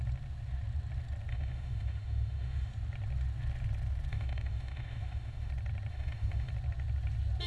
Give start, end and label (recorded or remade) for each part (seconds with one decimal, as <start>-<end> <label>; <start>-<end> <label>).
0.0-1.3 recorded; 1.3-2.7 remade; 2.7-4.1 recorded; 4.1-5.5 remade; 5.5-5.9 recorded; 5.9-6.5 remade; 6.5-7.5 recorded